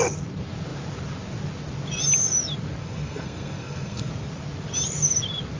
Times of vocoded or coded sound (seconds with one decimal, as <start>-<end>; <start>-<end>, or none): 2.8-4.1